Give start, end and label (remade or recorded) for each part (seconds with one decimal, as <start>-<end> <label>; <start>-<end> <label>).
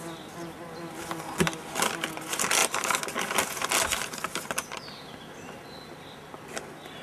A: 0.0-7.0 recorded